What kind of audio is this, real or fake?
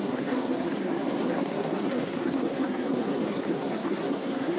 fake